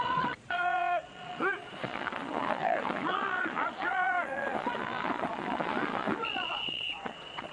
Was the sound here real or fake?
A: fake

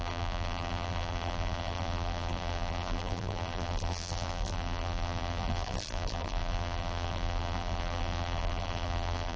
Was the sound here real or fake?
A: fake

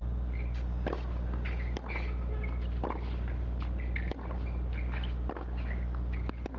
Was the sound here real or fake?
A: real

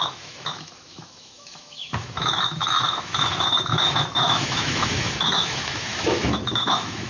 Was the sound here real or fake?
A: fake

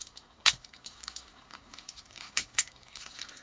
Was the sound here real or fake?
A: fake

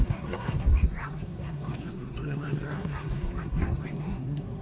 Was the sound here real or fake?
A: fake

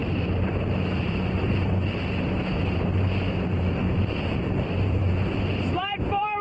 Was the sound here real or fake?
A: fake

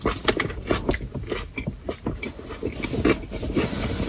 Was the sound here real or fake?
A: real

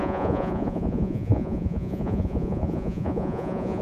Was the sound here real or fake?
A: fake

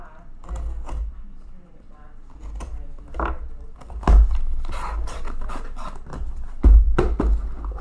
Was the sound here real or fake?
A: real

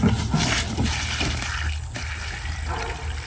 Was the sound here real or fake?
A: real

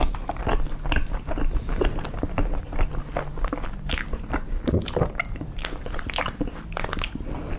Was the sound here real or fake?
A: real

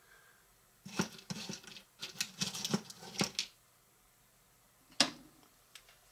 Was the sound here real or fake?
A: real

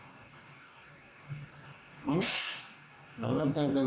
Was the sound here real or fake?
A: fake